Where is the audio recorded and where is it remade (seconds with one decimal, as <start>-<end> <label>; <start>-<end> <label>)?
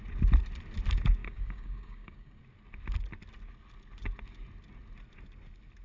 0.0-1.2 recorded; 1.2-2.4 remade; 2.4-5.8 recorded